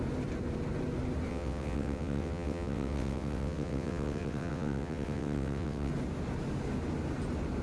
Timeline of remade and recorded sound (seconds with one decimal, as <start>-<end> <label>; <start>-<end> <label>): 0.0-1.3 recorded; 1.3-5.9 remade; 5.9-7.6 recorded